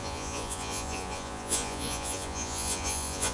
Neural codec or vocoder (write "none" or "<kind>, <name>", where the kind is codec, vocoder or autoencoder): vocoder, Vocos